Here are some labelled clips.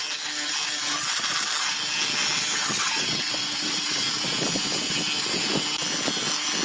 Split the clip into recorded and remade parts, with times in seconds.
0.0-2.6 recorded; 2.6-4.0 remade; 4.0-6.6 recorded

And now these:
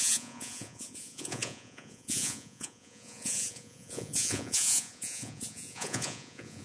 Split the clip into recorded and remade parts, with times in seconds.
0.0-6.6 remade